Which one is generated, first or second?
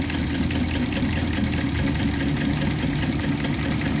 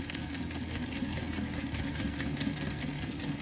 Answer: second